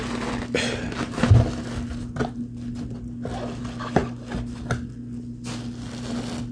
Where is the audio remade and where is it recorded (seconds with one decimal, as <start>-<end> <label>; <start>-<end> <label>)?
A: 0.0-6.5 recorded